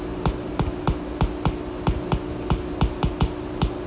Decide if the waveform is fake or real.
real